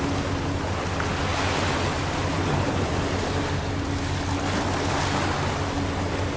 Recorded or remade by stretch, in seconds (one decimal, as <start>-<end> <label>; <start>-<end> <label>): 0.0-6.4 recorded